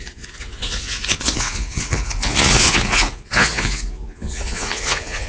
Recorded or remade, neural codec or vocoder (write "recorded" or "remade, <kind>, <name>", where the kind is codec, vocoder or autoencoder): remade, vocoder, Vocos